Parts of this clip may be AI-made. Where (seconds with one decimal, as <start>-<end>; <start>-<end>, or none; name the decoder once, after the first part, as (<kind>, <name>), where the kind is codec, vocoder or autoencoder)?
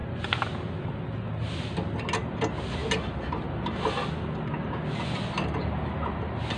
none